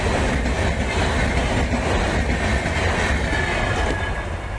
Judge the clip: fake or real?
real